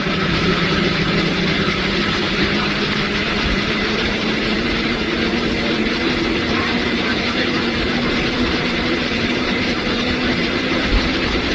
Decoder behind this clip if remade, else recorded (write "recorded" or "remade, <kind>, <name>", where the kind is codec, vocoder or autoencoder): remade, vocoder, BigVGAN v2